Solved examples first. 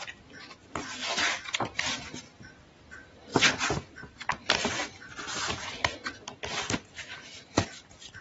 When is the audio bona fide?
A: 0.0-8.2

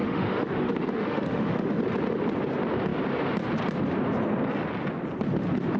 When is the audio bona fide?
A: 1.8-5.8